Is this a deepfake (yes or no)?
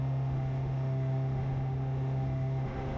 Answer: yes